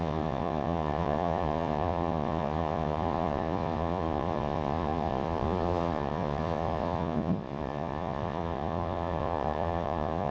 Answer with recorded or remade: remade